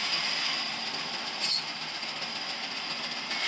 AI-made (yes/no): no